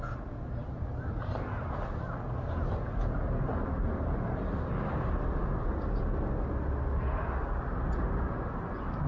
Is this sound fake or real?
real